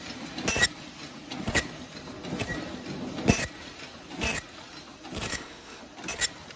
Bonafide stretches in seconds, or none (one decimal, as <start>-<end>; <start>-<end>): 0.0-5.3; 5.8-6.6